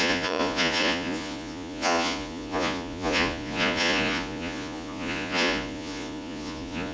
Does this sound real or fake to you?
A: fake